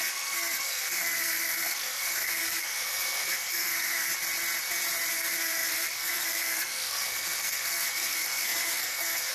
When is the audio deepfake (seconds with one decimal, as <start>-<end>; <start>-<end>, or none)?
0.0-4.1; 5.1-9.3